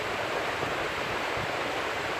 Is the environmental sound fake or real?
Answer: real